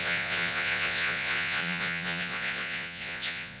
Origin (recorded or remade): remade